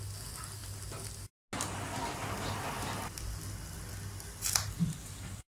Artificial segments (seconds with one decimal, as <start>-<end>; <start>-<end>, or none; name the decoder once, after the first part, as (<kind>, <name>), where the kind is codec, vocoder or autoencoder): none